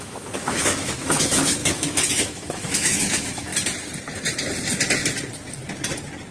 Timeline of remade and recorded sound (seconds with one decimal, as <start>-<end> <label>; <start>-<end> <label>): 0.0-3.5 remade; 3.5-6.3 recorded